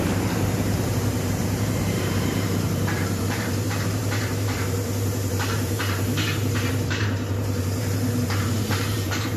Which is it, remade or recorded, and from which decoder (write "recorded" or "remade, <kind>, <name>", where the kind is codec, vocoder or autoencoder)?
remade, vocoder, BigVGAN v2